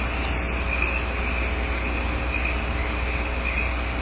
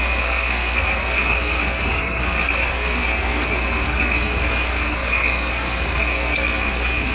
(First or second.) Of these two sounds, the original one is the first